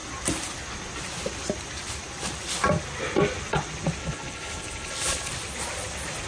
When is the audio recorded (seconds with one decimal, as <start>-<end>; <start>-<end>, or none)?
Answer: 0.0-4.0; 5.3-6.3